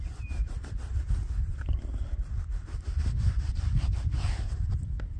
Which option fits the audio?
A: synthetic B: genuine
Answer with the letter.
A